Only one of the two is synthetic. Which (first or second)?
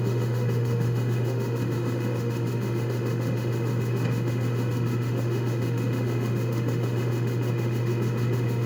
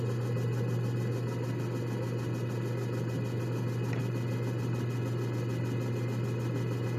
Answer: first